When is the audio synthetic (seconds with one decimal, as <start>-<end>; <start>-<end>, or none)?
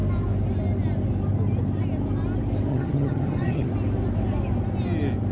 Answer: 2.7-3.7